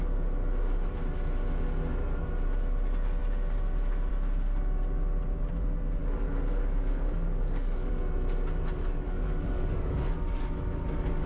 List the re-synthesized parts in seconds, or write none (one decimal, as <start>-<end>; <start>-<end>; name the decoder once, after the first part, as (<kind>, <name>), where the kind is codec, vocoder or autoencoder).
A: 6.0-7.9 (codec, DAC); 8.8-11.3